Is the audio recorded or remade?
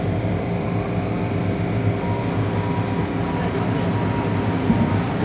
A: recorded